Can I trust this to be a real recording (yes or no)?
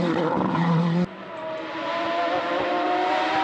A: no